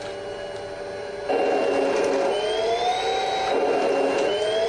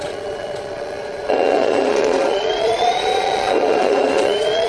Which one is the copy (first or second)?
second